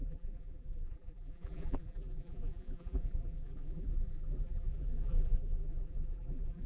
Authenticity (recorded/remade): remade